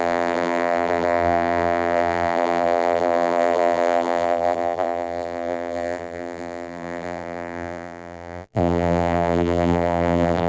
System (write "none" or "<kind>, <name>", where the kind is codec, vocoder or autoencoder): vocoder, BigVGAN v2